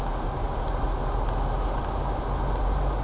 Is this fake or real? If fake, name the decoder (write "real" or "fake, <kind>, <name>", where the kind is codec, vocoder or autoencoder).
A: real